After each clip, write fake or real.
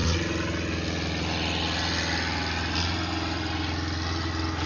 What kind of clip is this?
real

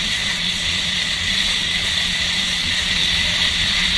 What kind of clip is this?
fake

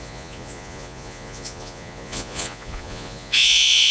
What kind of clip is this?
fake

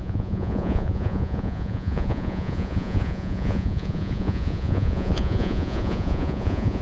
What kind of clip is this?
fake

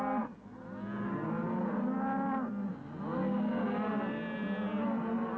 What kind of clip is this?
real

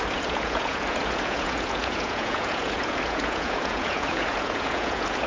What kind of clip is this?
fake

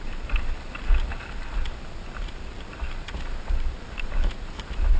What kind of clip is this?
real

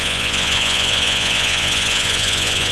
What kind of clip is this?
fake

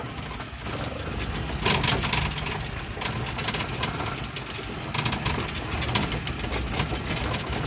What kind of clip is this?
real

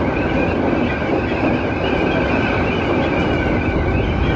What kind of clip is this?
real